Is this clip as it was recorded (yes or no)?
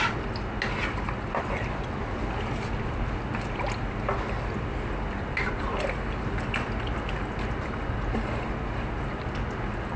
yes